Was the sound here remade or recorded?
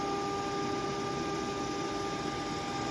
recorded